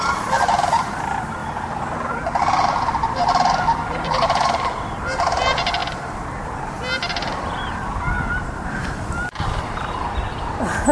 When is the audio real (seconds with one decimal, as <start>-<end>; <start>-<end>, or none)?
1.4-2.1; 5.8-7.1